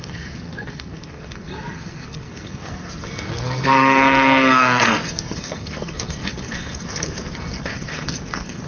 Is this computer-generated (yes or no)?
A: yes